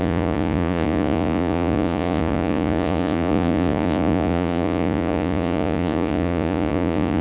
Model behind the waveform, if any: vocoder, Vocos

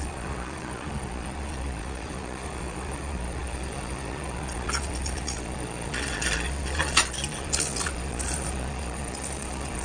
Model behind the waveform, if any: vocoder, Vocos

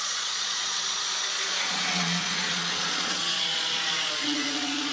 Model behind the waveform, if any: vocoder, Vocos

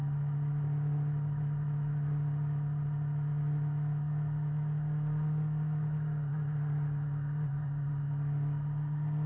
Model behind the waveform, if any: none